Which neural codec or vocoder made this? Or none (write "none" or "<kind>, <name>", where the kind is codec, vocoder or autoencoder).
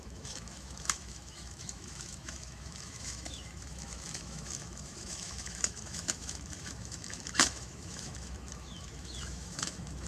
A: autoencoder, DAC-VAE